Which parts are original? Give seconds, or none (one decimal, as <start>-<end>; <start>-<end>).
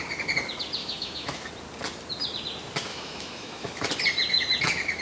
0.0-0.8; 1.5-2.9; 3.9-5.0